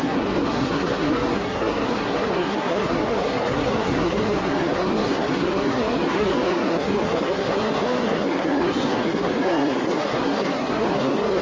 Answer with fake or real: fake